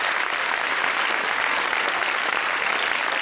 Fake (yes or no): no